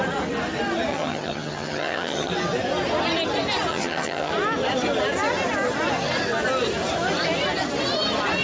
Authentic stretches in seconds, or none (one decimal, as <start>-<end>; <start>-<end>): 0.0-0.9; 2.3-3.7; 4.3-8.4